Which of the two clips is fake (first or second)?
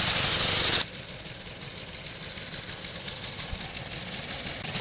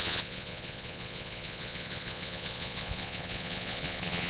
second